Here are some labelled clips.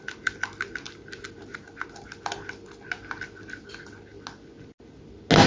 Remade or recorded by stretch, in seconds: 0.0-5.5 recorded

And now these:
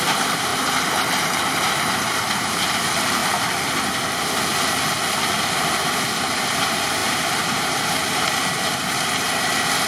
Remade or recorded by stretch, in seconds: 0.0-3.2 remade; 3.2-6.6 recorded; 6.6-9.9 remade

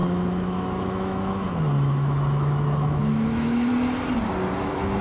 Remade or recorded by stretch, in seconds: 0.0-3.7 remade; 3.7-4.6 recorded; 4.6-5.0 remade